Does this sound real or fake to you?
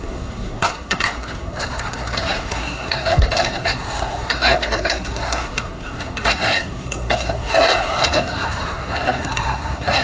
fake